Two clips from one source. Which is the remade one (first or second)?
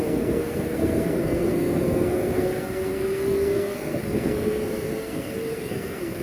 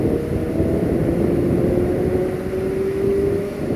first